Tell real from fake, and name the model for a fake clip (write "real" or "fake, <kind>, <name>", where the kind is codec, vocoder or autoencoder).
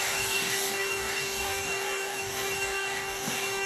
fake, codec, DAC